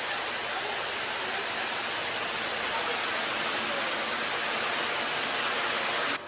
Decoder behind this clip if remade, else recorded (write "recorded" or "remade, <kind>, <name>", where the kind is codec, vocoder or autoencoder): recorded